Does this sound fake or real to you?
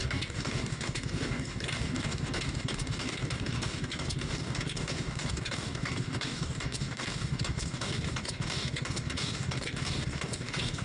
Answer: fake